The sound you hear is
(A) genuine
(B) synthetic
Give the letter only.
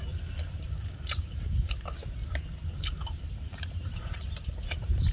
A